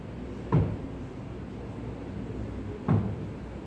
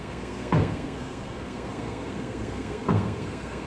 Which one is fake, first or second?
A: second